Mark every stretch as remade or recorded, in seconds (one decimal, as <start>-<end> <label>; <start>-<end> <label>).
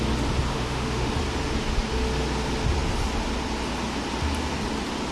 0.0-0.5 recorded; 0.5-1.1 remade; 1.1-5.1 recorded